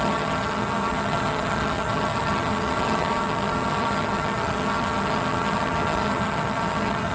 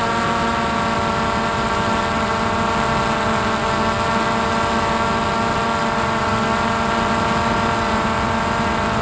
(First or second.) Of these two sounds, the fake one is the first